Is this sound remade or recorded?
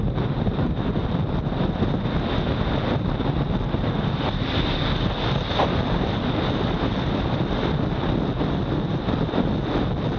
recorded